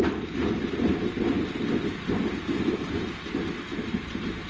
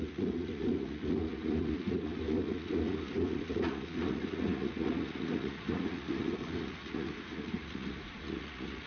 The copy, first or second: second